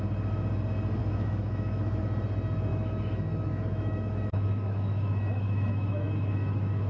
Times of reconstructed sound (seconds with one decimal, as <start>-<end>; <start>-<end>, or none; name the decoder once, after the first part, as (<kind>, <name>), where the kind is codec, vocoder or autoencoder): 1.0-2.0 (autoencoder, DAC-VAE); 2.7-6.9